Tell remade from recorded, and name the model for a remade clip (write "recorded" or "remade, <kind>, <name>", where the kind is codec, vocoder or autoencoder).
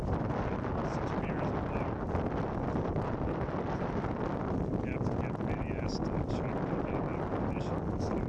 remade, vocoder, BigVGAN v2